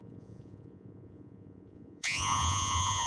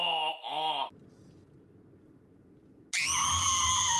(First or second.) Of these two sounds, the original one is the second